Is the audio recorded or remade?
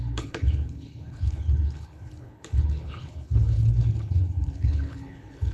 remade